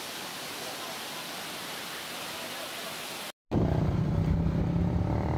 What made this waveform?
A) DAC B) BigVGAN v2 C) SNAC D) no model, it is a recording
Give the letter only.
D